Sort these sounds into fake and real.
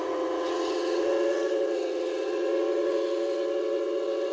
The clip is fake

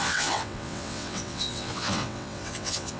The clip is fake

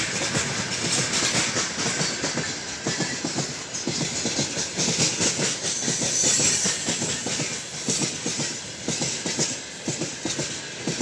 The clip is real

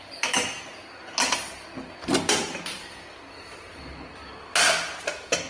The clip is real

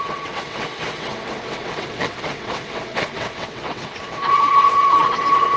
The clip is fake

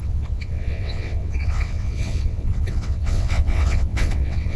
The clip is fake